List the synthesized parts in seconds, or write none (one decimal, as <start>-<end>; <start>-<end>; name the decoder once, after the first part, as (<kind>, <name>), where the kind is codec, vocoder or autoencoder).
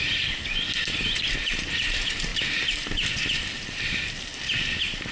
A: none